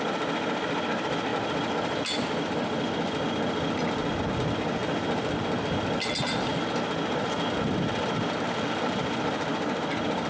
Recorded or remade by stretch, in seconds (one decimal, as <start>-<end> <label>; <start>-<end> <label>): 0.0-10.3 recorded